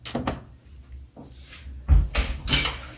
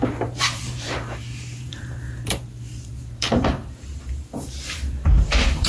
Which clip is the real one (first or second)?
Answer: first